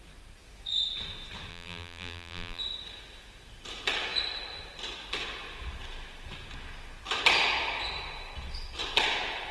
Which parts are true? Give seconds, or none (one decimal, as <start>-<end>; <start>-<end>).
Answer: 0.0-1.5; 2.6-9.5